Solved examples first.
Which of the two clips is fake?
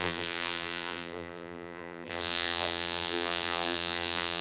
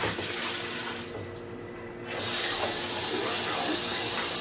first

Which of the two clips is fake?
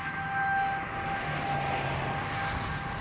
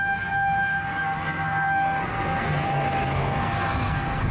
second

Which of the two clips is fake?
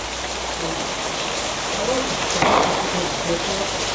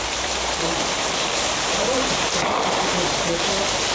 second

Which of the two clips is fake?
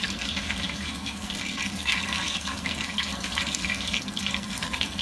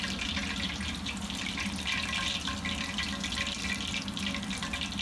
first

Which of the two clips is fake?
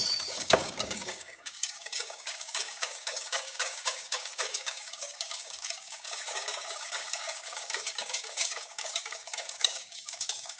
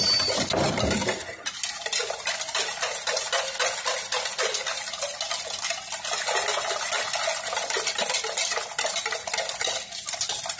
first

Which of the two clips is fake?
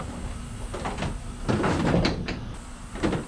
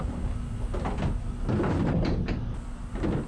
first